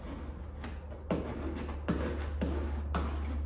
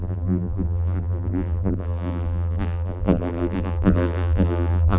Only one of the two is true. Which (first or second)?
first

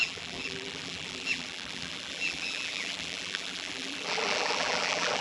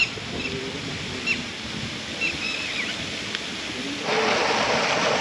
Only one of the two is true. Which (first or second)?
second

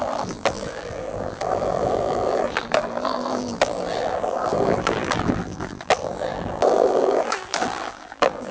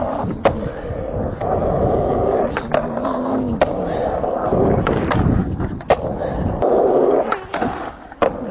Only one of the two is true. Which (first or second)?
second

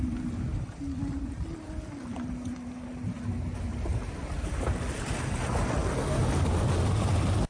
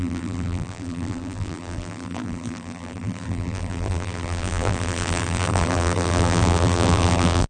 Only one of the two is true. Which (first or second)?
first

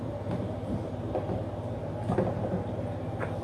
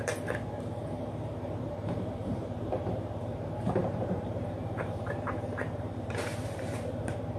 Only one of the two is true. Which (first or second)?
first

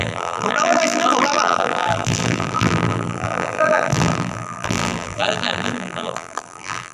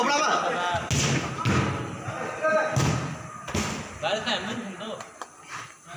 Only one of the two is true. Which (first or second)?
second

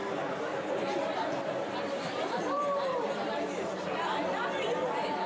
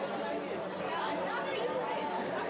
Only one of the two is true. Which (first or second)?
second